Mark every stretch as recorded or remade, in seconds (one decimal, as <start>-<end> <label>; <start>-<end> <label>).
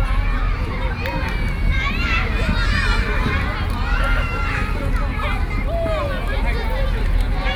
0.0-7.6 recorded